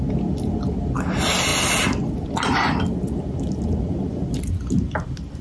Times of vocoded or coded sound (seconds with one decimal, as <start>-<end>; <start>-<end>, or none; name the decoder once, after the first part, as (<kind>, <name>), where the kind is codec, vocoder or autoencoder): none